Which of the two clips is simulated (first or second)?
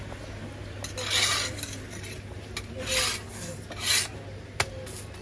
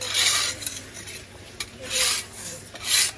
second